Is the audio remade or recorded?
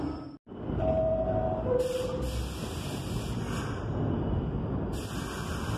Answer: recorded